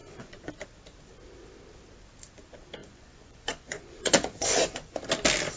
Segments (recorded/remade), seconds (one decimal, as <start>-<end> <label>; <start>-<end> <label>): 0.0-0.5 remade; 0.5-2.8 recorded; 2.8-5.0 remade; 5.0-5.6 recorded